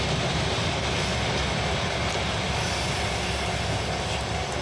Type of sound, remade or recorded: recorded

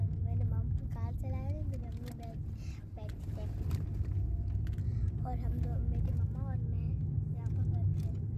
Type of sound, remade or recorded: recorded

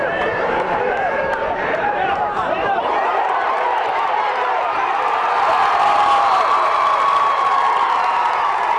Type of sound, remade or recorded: remade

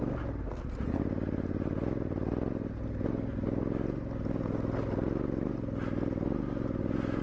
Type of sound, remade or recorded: recorded